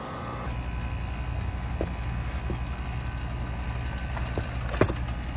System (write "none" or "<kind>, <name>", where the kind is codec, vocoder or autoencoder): none